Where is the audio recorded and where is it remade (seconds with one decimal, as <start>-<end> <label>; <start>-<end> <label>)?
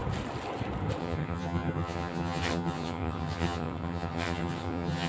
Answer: 0.0-1.0 recorded; 1.0-5.1 remade